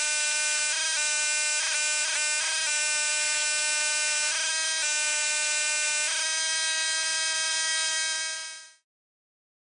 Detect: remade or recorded recorded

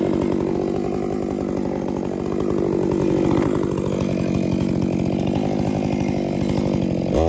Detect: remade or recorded recorded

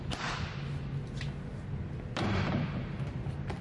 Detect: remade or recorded recorded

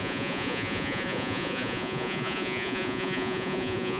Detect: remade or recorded remade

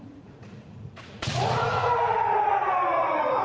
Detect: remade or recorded remade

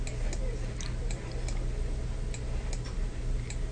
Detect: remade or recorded recorded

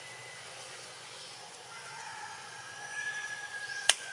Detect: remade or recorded remade